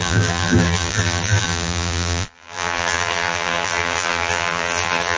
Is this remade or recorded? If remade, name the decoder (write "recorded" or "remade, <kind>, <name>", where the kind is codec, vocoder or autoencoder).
remade, vocoder, BigVGAN v2